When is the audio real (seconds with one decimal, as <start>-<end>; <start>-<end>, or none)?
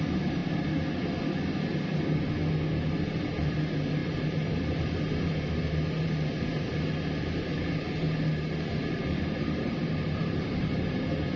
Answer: 0.4-3.3